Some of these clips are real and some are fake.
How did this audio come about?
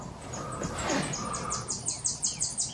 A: real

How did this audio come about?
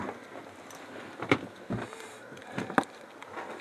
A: real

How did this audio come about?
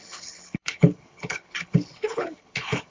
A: fake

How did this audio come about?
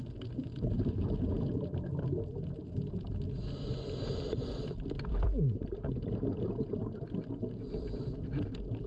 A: real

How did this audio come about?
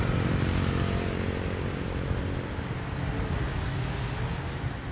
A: real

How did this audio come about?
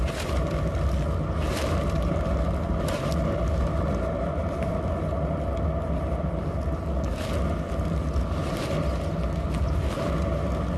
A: real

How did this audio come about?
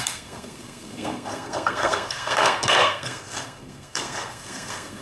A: fake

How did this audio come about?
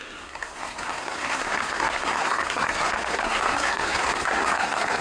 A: fake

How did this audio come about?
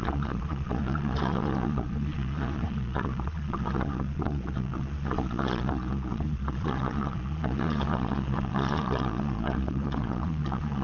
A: fake